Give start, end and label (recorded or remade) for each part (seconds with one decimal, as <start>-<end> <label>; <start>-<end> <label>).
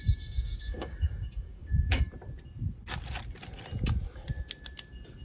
0.0-2.0 remade; 2.0-5.2 recorded